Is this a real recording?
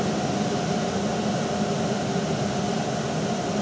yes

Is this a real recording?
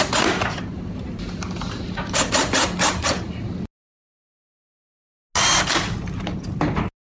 yes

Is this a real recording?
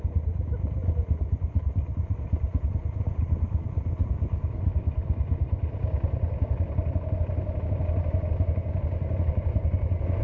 yes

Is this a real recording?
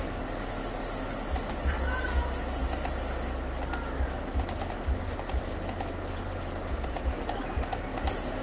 yes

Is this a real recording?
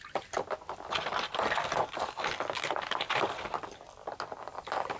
yes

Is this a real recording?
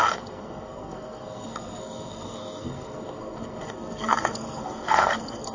no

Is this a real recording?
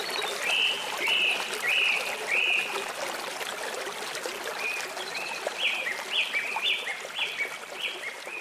yes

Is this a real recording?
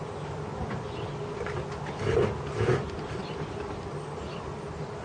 yes